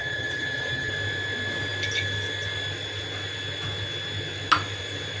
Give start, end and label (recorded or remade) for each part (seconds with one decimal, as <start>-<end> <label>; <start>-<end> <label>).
0.0-0.9 remade; 0.9-5.2 recorded